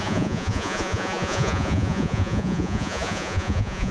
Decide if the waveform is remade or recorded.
remade